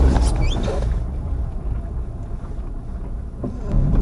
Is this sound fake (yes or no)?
no